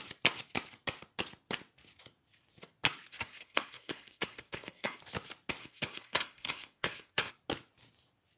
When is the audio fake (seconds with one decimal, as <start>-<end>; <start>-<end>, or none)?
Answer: 3.1-5.0; 5.6-7.3